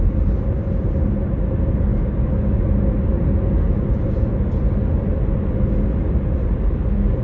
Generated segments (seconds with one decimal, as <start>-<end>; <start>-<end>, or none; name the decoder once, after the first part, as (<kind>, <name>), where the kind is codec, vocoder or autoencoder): none